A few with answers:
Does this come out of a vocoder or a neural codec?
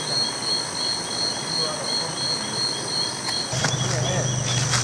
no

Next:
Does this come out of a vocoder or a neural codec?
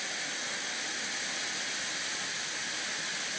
no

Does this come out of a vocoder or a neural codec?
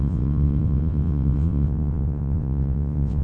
yes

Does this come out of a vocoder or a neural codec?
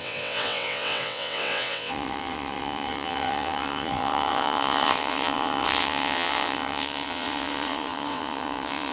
yes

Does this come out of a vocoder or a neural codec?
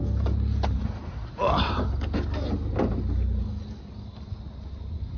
no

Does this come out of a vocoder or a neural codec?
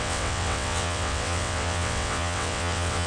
yes